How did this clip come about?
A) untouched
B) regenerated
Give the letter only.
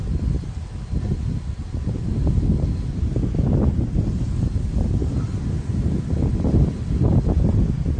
A